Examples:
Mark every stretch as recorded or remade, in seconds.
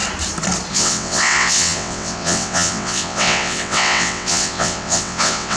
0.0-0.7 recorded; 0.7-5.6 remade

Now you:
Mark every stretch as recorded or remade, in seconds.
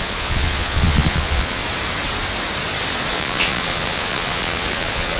0.0-1.6 remade; 1.6-3.1 recorded; 3.1-5.2 remade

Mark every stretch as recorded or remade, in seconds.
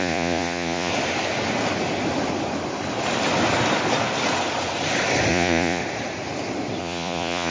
0.0-0.9 remade; 0.9-5.3 recorded; 5.3-5.8 remade; 5.8-6.8 recorded; 6.8-7.5 remade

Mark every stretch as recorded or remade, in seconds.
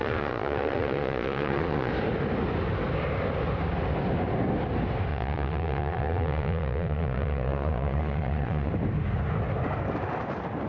0.0-1.9 remade; 1.9-5.1 recorded; 5.1-8.7 remade; 8.7-10.7 recorded